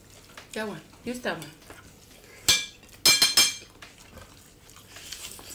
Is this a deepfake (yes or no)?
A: no